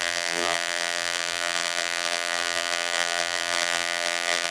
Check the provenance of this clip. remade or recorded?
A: remade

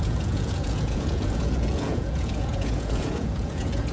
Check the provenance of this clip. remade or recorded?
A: remade